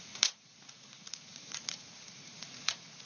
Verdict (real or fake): fake